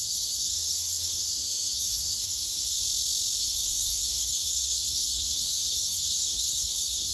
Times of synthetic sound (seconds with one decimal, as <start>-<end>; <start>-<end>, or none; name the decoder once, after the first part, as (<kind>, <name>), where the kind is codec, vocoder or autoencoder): 0.0-2.8 (codec, SNAC); 3.4-7.1